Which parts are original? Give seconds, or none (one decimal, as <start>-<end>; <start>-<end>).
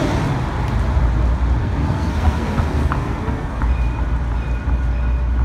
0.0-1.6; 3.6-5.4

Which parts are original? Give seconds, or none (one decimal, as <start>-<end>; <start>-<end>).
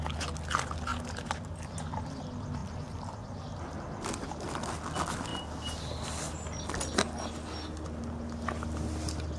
0.0-9.4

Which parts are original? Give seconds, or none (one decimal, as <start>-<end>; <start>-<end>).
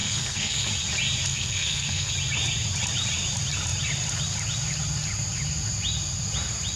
0.7-1.3; 2.1-6.8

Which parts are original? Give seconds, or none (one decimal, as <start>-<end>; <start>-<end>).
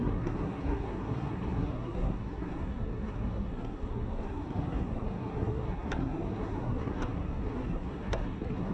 none